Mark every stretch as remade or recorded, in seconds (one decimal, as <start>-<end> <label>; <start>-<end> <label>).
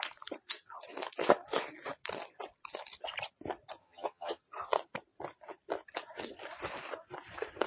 0.0-3.8 recorded; 3.8-4.4 remade; 4.4-7.7 recorded